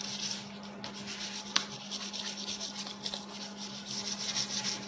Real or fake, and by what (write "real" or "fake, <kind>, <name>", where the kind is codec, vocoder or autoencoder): real